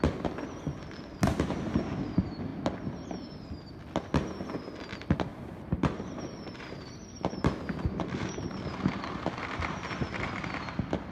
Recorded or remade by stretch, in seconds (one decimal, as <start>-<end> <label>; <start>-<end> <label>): 0.0-5.3 recorded; 5.3-10.5 remade; 10.5-11.1 recorded